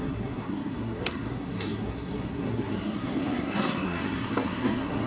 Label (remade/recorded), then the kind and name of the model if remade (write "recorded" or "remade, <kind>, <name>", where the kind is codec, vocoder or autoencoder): remade, codec, SNAC